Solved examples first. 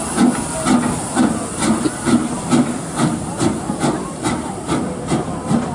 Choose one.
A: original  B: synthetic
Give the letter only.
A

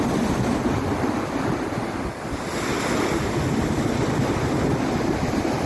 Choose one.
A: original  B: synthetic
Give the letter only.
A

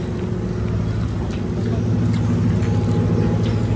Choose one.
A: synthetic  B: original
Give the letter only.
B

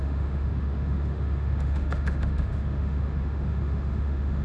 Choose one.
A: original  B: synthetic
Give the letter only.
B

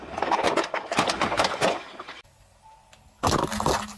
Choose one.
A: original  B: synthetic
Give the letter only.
A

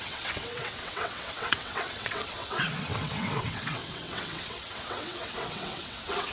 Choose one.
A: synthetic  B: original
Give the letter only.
A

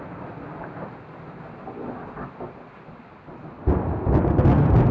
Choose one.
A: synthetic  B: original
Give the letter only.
B